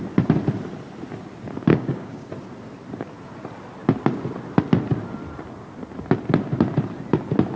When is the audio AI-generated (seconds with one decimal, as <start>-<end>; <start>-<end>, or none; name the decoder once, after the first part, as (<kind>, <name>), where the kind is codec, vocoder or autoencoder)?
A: 1.7-2.3 (codec, DAC)